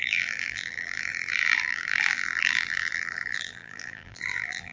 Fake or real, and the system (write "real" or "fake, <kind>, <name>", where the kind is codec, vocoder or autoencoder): fake, vocoder, BigVGAN v2